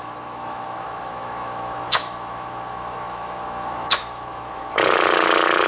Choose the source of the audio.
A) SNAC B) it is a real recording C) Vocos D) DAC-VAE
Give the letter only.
D